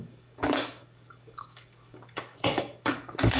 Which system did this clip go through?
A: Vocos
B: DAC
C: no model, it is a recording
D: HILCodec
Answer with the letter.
B